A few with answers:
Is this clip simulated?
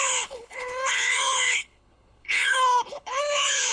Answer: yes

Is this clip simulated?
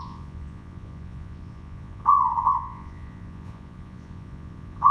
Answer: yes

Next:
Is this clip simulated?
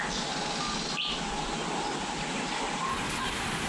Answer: no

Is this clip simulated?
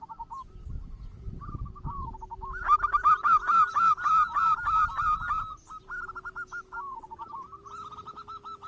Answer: no